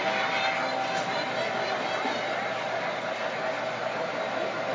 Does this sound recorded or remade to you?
recorded